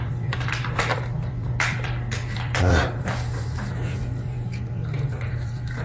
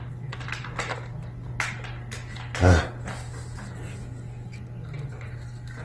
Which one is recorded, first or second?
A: second